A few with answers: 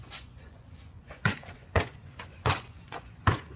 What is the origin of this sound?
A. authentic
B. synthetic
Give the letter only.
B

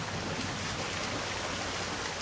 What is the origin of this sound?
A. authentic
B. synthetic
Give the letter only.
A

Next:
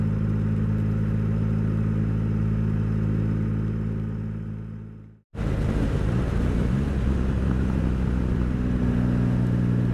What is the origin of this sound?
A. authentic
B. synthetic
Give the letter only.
A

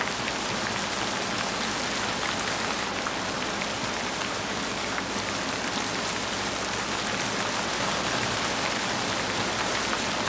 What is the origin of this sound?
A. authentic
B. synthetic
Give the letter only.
A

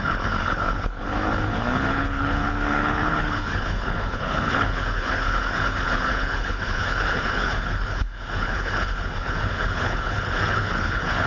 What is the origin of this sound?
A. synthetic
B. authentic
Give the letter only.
A